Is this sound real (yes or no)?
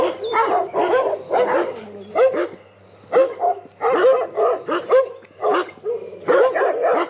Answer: yes